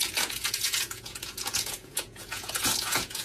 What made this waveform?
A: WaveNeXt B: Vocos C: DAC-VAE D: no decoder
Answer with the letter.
B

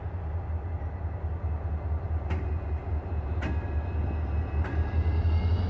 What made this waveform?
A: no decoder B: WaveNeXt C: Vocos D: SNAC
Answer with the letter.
A